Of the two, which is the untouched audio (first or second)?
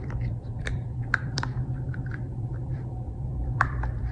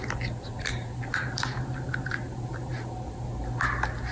second